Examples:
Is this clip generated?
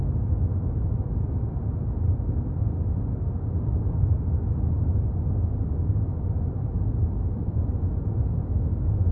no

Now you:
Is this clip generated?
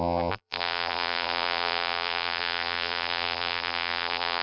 yes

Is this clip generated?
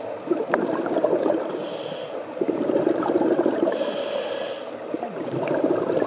no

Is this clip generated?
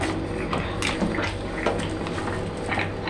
no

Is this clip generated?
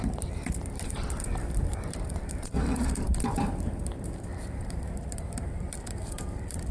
yes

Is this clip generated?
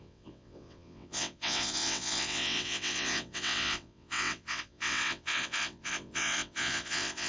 yes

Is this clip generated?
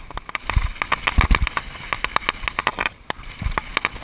no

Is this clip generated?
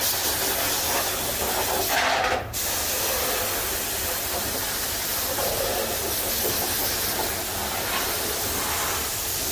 no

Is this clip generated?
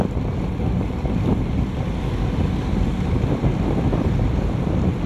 no